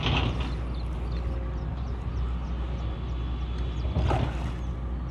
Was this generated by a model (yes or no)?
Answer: no